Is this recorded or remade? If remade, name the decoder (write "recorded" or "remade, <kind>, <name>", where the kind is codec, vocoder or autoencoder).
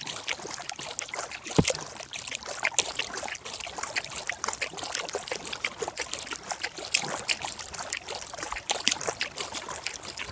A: recorded